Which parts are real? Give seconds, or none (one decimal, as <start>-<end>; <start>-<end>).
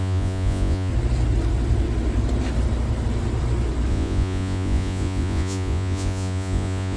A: 0.9-3.9